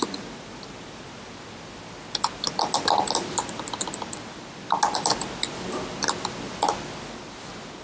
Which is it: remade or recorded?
recorded